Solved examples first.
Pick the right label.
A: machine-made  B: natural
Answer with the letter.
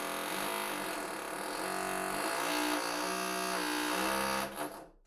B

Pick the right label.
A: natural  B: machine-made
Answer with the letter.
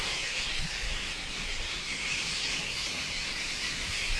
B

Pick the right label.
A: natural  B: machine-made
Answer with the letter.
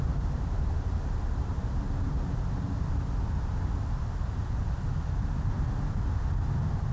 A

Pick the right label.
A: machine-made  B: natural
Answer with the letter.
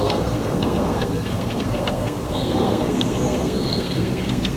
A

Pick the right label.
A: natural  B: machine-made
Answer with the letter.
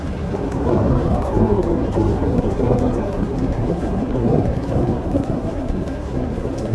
B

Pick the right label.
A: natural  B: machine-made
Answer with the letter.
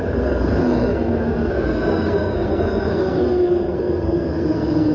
B